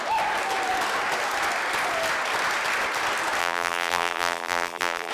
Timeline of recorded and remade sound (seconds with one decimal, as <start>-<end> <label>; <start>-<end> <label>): 0.0-3.4 recorded; 3.4-5.1 remade